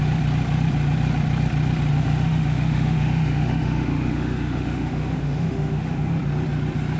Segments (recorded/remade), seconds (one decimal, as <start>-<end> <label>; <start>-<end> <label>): 0.0-1.9 recorded; 1.9-6.1 remade; 6.1-7.0 recorded